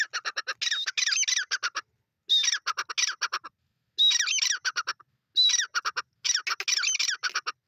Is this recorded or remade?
recorded